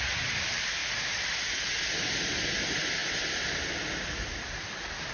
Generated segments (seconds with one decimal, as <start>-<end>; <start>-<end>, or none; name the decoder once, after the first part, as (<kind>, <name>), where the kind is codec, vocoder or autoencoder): none